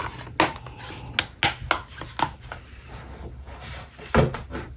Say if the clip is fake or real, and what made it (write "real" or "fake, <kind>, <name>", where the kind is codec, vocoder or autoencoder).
real